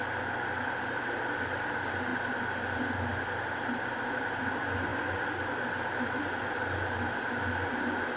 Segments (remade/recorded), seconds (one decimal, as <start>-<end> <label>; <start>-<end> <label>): 0.0-8.2 recorded

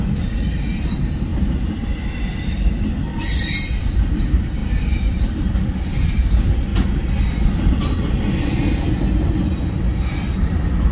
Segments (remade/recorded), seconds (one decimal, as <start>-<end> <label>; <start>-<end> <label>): 0.0-3.1 remade; 3.1-3.8 recorded; 3.8-6.7 remade; 6.7-10.4 recorded; 10.4-10.9 remade

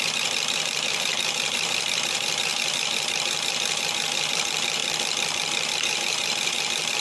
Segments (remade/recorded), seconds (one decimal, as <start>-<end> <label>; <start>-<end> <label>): 0.0-4.8 remade; 4.8-5.7 recorded; 5.7-7.0 remade

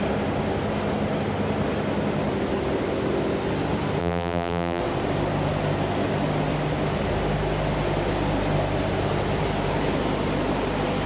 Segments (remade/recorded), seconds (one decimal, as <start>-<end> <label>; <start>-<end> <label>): 0.0-4.0 recorded; 4.0-4.8 remade; 4.8-11.1 recorded

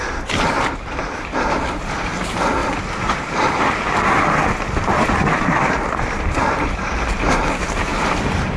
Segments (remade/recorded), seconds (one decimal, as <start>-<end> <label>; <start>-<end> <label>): 0.0-2.6 remade; 2.6-7.1 recorded; 7.1-7.9 remade; 7.9-8.6 recorded

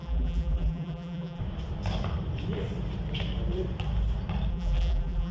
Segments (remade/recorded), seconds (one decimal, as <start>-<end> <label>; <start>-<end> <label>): 0.0-1.4 remade; 1.4-4.5 recorded; 4.5-5.3 remade

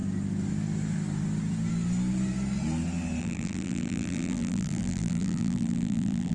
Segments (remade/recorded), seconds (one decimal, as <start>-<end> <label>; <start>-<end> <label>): 0.0-3.2 recorded; 3.2-6.3 remade

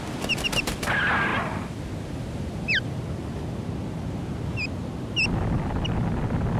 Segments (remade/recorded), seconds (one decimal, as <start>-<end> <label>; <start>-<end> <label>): 0.0-6.6 recorded